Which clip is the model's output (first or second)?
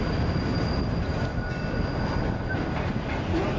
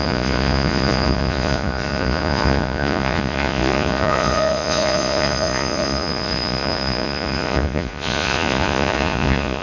second